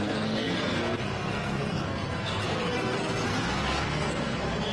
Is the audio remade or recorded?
remade